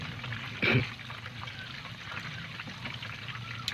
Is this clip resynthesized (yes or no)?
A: no